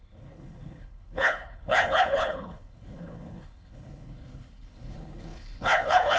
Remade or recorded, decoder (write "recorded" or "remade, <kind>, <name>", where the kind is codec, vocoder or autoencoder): remade, codec, HILCodec